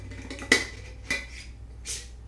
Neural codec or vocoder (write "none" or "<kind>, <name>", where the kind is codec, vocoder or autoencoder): none